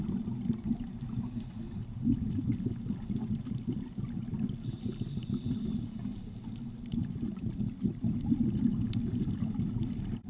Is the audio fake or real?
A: real